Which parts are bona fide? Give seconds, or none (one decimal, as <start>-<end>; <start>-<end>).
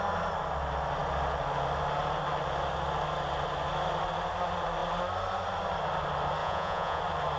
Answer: 0.0-6.4; 7.0-7.4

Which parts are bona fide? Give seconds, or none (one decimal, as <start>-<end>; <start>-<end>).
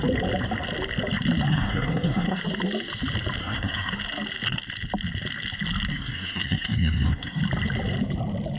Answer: 0.0-1.5; 2.4-3.4; 3.9-5.9; 7.4-8.6